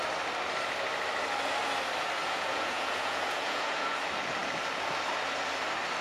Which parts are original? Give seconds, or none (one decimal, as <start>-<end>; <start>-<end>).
0.0-2.2; 3.9-6.0